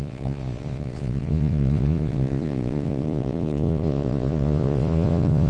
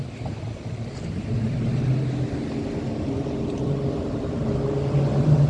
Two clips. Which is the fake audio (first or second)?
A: first